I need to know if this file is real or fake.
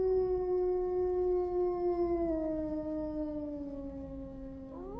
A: fake